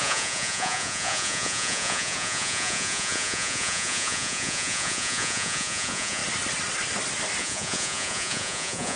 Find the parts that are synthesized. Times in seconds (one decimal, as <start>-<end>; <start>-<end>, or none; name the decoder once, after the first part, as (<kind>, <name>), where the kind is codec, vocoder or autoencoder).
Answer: 0.0-6.2 (vocoder, Vocos); 7.4-9.0